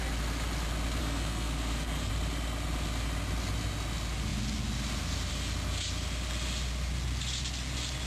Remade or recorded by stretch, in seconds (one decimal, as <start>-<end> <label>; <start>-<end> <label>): 0.0-1.0 recorded; 1.0-2.1 remade; 2.1-8.1 recorded